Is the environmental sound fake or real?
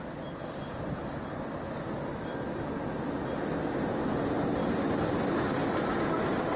real